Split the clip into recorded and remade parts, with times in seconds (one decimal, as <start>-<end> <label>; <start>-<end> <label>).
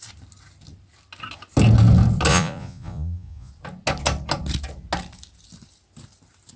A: 0.0-2.3 recorded; 2.3-3.5 remade; 3.5-6.6 recorded